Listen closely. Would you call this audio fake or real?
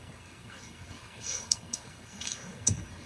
fake